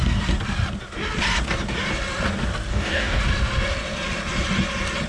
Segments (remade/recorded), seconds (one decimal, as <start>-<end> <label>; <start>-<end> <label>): 0.0-2.7 recorded; 2.7-3.2 remade; 3.2-5.1 recorded